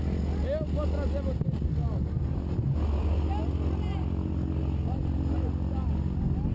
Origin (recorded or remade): recorded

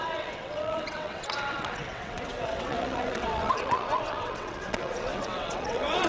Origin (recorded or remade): remade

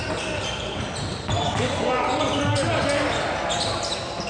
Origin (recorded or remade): recorded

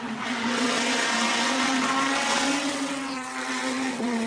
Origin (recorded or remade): remade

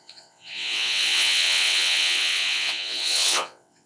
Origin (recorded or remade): remade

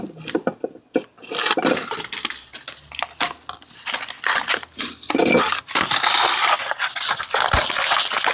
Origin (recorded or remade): recorded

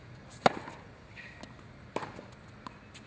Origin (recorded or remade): recorded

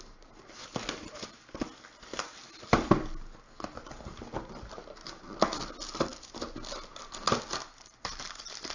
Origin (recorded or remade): recorded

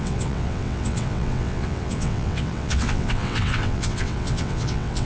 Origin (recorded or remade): remade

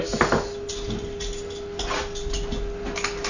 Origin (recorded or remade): recorded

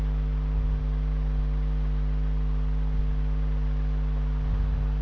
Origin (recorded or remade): recorded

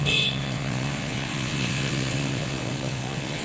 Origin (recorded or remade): remade